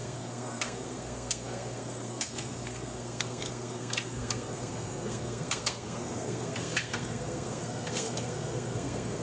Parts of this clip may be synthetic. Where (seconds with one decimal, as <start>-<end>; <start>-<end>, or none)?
0.0-9.2